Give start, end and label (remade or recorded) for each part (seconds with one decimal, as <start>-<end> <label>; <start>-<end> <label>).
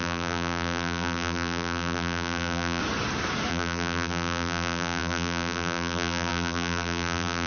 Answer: 0.0-2.8 remade; 2.8-3.5 recorded; 3.5-7.5 remade